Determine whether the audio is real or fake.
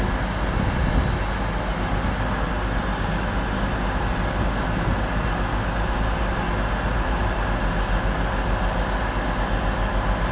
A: real